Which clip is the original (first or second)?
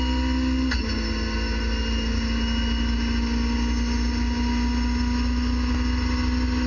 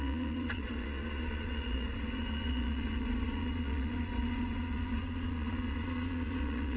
first